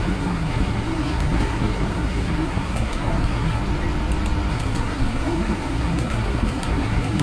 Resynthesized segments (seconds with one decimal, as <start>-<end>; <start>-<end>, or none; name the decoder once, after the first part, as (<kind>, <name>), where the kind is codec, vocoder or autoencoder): 0.0-3.6 (codec, SNAC); 4.5-7.2